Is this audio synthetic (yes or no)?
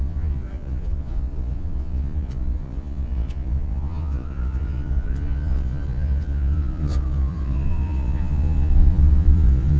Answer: yes